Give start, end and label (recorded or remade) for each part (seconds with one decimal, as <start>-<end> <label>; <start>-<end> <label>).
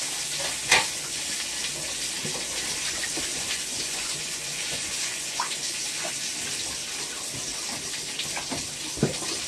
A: 0.0-0.6 recorded; 0.6-1.2 remade; 1.2-3.3 recorded; 3.3-6.1 remade; 6.1-9.5 recorded